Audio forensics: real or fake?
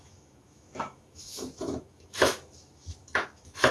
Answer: fake